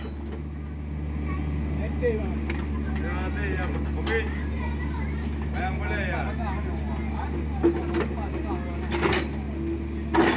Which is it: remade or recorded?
recorded